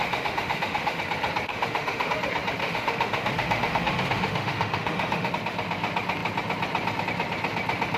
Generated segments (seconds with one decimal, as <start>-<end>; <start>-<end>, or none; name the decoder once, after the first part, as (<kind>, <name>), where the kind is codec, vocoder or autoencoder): 0.0-1.0 (autoencoder, DAC-VAE); 1.5-2.1; 2.6-5.3